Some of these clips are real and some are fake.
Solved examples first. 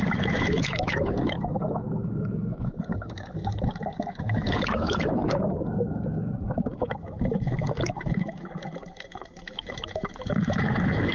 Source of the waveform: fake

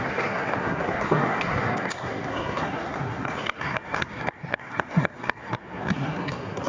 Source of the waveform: fake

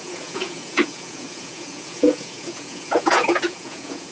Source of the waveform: fake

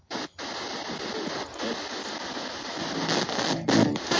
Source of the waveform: real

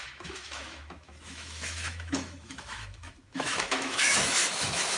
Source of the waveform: fake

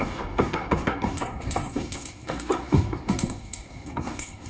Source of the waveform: fake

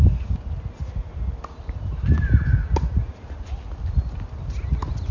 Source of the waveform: real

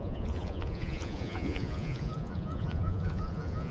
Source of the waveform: fake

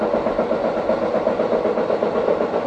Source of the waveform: real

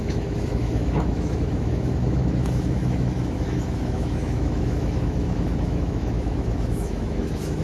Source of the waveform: fake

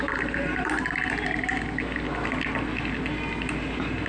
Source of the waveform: real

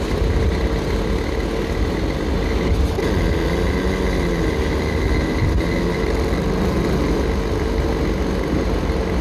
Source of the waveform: real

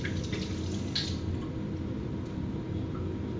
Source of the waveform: real